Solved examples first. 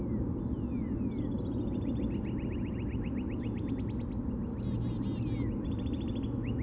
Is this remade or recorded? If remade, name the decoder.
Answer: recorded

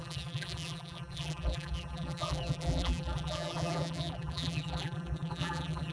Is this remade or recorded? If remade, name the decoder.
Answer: remade, vocoder, BigVGAN v2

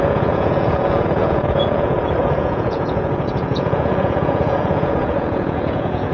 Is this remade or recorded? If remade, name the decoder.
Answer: remade, vocoder, Vocos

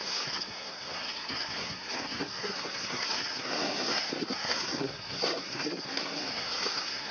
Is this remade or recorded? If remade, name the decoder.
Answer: remade, codec, SNAC